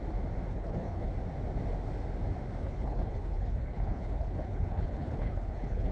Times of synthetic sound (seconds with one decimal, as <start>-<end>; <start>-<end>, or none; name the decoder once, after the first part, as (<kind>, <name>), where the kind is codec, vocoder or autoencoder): 0.5-1.1 (codec, HILCodec); 2.6-5.9